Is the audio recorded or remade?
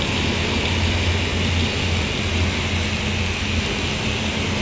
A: recorded